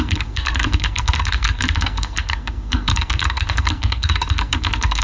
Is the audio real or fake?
fake